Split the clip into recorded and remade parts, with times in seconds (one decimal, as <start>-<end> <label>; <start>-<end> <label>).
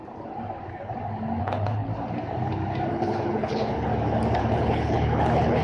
0.0-1.4 recorded; 1.4-1.9 remade; 1.9-2.9 recorded; 2.9-3.9 remade; 3.9-4.4 recorded; 4.4-5.6 remade